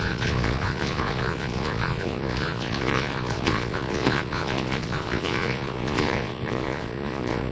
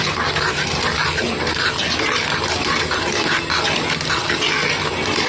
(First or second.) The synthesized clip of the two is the first